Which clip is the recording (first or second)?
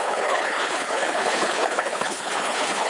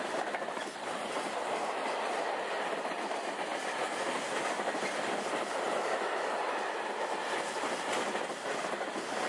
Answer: second